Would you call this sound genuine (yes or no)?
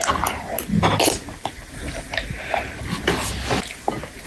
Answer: yes